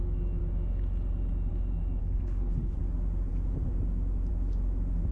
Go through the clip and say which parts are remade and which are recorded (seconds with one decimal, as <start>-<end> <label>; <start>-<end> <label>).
0.0-2.0 recorded; 2.0-2.8 remade; 2.8-5.1 recorded